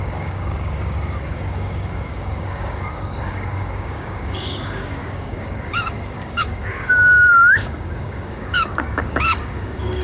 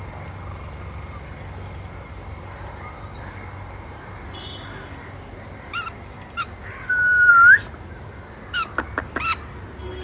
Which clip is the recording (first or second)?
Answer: second